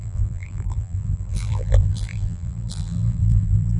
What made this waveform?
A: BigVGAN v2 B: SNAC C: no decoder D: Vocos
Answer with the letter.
A